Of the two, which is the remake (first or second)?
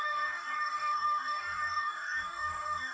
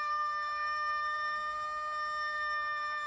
first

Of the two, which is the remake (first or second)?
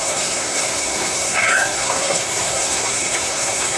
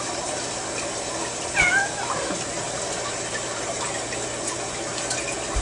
first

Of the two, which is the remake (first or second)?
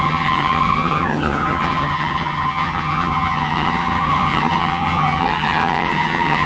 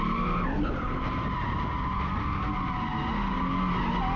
first